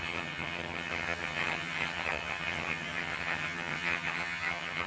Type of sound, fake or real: fake